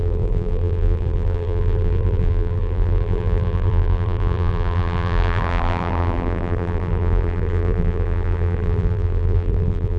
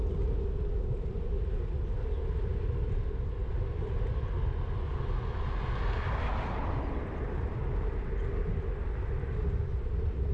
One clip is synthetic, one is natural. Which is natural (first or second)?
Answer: second